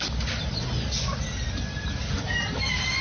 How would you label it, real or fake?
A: real